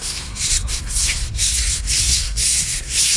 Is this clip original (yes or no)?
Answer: no